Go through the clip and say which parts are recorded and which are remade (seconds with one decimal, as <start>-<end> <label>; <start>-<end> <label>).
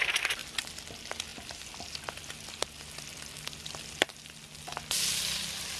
0.0-1.3 recorded; 1.3-4.8 remade; 4.8-5.8 recorded